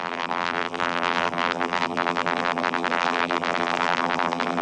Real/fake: fake